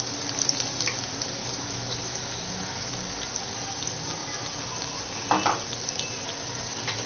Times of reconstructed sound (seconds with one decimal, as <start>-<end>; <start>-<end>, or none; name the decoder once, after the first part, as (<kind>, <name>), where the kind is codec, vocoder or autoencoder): 1.4-2.9 (autoencoder, DAC-VAE)